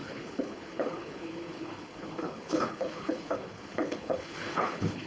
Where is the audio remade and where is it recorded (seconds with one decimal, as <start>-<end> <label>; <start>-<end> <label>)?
0.0-5.1 remade